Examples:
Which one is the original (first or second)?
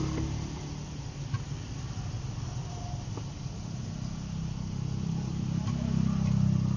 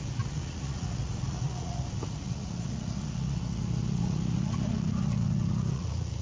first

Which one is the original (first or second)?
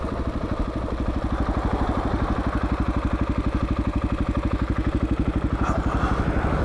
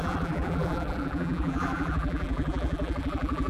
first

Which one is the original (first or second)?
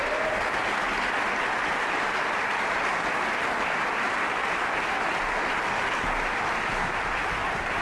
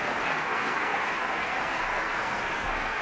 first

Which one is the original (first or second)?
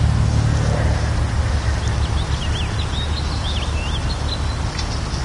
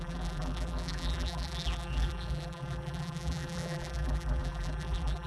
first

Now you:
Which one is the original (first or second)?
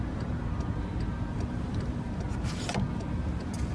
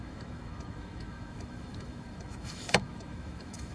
first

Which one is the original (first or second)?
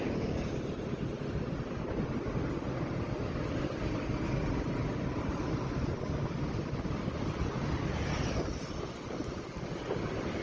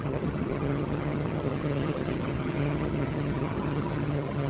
first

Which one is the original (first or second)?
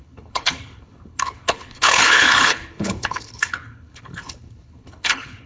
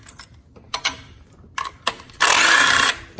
second